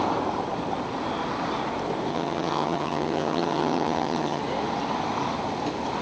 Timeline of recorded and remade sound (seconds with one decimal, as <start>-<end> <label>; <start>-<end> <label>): 0.0-2.1 recorded; 2.1-4.4 remade; 4.4-6.0 recorded